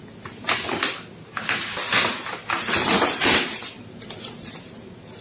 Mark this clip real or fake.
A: real